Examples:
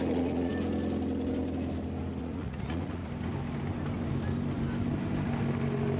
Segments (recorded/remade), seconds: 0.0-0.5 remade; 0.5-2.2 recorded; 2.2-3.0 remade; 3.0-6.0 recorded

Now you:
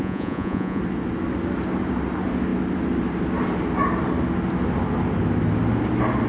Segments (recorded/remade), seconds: 0.0-0.8 remade; 0.8-6.3 recorded